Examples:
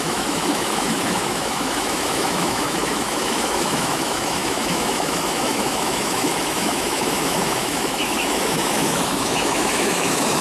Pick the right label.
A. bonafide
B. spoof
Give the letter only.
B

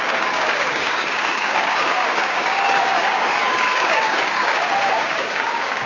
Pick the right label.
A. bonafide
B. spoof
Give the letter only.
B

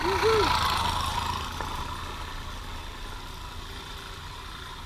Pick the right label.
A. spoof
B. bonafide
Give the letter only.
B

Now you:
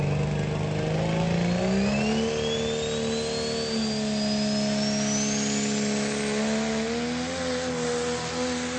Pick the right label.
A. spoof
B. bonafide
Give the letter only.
B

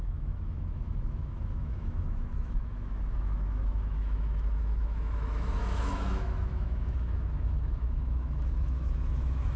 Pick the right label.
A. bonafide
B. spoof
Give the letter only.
B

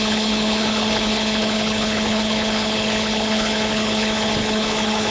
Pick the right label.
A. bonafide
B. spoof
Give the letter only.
B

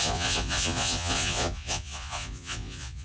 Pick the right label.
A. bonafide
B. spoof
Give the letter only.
B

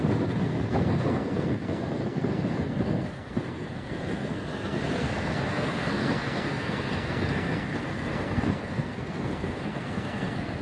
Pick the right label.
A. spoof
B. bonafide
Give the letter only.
A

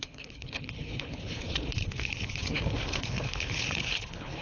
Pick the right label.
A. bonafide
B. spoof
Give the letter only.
B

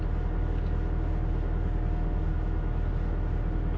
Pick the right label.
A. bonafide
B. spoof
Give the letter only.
A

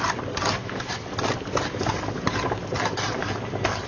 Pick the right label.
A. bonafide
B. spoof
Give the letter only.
A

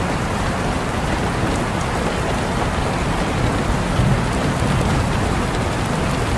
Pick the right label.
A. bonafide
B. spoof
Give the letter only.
B